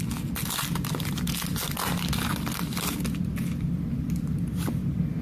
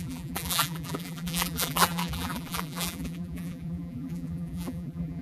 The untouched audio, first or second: first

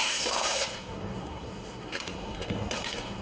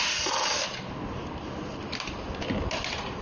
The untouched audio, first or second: second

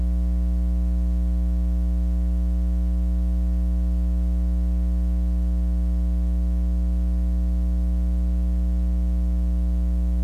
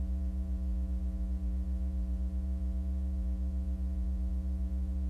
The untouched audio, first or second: first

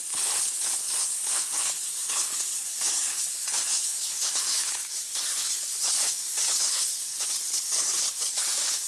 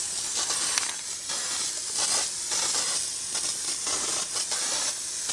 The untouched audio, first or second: second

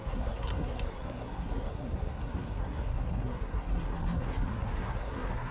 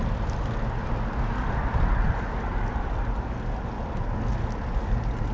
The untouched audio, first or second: second